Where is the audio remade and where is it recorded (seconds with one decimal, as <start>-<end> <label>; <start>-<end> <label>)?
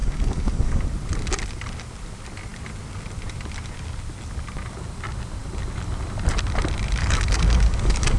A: 0.0-0.8 remade; 0.8-7.0 recorded; 7.0-8.2 remade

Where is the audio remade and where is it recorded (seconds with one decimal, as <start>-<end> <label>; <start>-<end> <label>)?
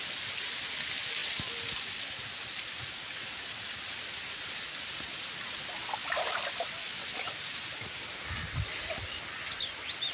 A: 0.0-1.2 recorded; 1.2-2.9 remade; 2.9-10.1 recorded